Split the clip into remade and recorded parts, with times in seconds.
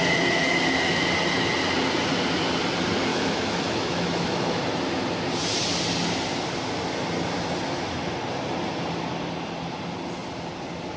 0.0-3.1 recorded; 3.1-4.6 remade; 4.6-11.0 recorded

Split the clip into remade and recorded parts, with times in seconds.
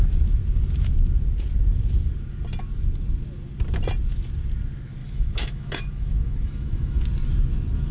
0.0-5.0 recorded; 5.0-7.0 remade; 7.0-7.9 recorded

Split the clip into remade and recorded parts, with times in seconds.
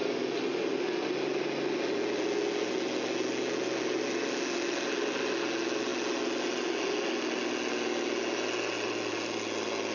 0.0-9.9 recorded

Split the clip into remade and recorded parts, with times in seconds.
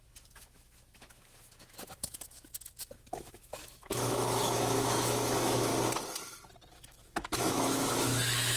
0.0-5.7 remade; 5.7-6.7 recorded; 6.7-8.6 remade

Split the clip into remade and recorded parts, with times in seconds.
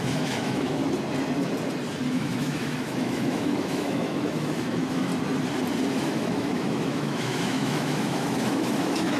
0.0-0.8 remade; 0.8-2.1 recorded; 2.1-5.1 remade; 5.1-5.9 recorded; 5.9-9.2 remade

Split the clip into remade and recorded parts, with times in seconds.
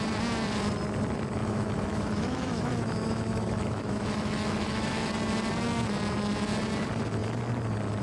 0.0-1.4 recorded; 1.4-5.1 remade; 5.1-8.0 recorded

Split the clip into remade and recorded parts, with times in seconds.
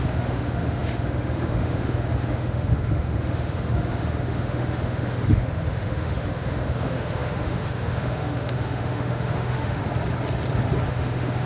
0.0-9.8 remade; 9.8-10.9 recorded; 10.9-11.5 remade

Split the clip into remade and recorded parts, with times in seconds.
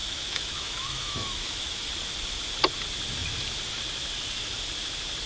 0.0-1.9 remade; 1.9-5.3 recorded